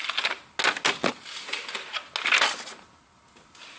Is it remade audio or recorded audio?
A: recorded